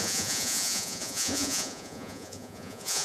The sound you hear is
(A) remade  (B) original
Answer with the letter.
A